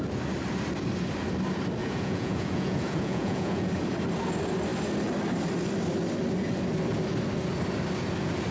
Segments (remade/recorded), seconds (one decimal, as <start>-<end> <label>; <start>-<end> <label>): 0.0-1.8 recorded; 1.8-3.7 remade; 3.7-8.5 recorded